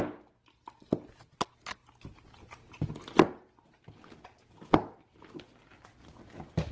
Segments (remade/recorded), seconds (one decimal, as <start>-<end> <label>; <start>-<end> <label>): 0.0-6.7 recorded